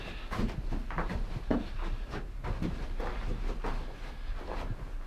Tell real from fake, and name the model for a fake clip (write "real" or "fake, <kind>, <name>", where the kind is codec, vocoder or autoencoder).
real